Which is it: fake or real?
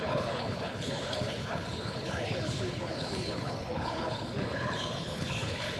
fake